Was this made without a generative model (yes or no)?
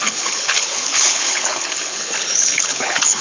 no